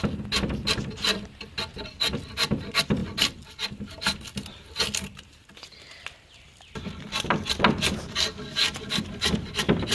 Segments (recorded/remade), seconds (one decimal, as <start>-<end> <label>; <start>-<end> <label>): 0.0-9.9 recorded